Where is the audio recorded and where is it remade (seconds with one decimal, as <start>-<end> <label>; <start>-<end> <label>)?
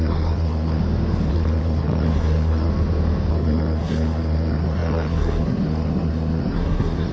0.0-0.8 remade; 0.8-1.3 recorded; 1.3-2.7 remade; 2.7-3.3 recorded; 3.3-7.1 remade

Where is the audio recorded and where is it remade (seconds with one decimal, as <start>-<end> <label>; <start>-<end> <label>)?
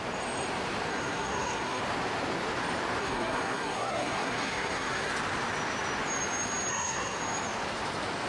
0.0-0.9 recorded; 0.9-1.8 remade; 1.8-3.0 recorded; 3.0-5.1 remade; 5.1-6.7 recorded; 6.7-7.2 remade; 7.2-8.3 recorded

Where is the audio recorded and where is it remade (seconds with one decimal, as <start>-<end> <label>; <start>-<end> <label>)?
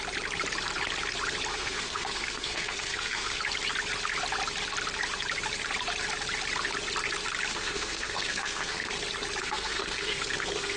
0.0-1.5 recorded; 1.5-3.4 remade; 3.4-7.5 recorded; 7.5-8.9 remade; 8.9-9.4 recorded; 9.4-10.8 remade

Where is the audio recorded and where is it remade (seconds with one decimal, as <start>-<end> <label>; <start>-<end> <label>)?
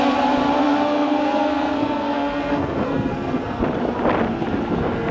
0.0-0.6 recorded; 0.6-3.6 remade; 3.6-5.1 recorded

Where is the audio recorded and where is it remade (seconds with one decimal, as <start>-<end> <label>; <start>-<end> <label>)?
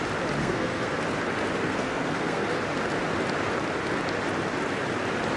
0.0-0.4 recorded; 0.4-1.0 remade; 1.0-1.6 recorded; 1.6-2.6 remade; 2.6-5.4 recorded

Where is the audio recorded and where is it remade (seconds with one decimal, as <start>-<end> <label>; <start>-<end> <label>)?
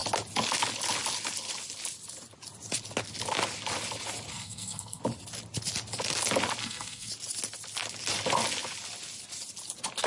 0.0-4.3 recorded; 4.3-5.0 remade; 5.0-6.6 recorded; 6.6-7.1 remade; 7.1-10.1 recorded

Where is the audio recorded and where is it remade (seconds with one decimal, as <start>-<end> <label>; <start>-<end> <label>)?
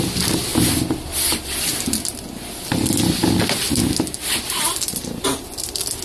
0.0-6.0 recorded